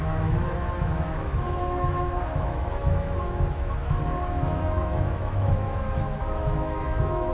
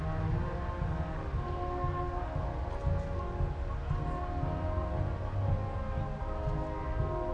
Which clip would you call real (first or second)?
second